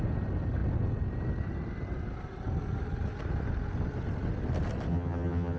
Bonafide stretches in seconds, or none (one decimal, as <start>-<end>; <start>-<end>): 0.0-4.9